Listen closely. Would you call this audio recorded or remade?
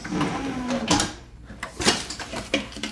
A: remade